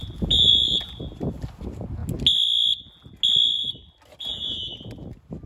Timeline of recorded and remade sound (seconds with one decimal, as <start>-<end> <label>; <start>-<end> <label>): 0.0-5.5 recorded